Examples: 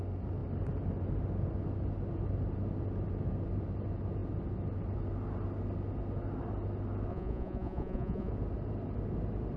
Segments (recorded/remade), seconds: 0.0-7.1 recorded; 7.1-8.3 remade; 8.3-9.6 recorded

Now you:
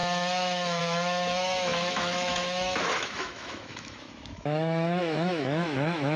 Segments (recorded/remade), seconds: 0.0-6.2 remade

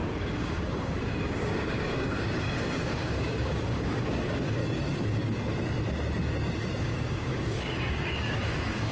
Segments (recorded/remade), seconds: 0.0-4.6 remade; 4.6-6.8 recorded; 6.8-8.9 remade

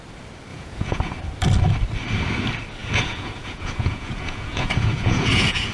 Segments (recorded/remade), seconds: 0.0-0.5 recorded; 0.5-1.0 remade; 1.0-2.8 recorded; 2.8-5.7 remade